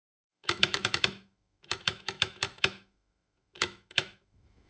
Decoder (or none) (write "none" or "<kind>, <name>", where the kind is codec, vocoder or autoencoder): autoencoder, DAC-VAE